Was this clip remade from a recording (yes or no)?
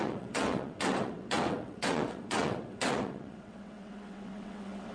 yes